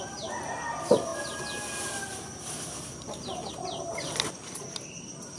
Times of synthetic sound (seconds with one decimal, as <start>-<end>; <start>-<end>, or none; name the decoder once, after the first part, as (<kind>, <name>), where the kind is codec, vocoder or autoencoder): none